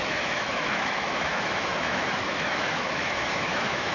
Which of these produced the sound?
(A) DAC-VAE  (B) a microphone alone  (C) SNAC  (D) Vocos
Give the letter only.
A